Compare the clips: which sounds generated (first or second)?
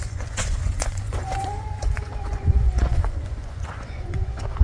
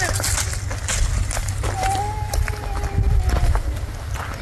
first